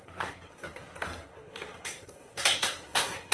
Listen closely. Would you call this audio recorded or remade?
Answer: remade